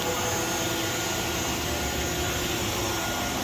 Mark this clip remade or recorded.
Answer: recorded